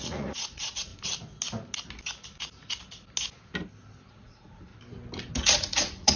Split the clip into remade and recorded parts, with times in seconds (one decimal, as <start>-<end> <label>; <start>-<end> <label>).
0.0-0.9 remade; 0.9-4.1 recorded; 4.1-4.7 remade; 4.7-5.4 recorded; 5.4-6.2 remade